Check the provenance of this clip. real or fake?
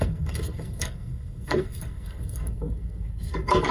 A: fake